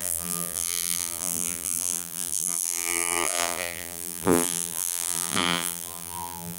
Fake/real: fake